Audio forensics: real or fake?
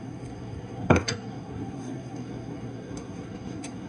fake